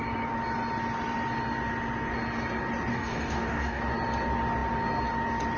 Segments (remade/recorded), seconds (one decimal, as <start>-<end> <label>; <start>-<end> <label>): 0.0-2.9 recorded; 2.9-3.8 remade; 3.8-5.6 recorded